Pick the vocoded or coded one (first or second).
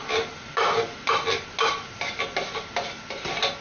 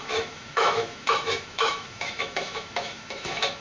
second